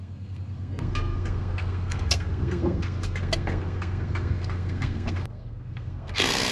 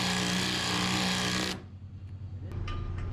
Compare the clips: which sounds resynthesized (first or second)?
first